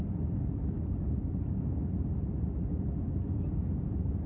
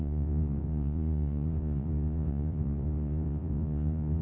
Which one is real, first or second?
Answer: first